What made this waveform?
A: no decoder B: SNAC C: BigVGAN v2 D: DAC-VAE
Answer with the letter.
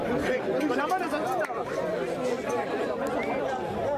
A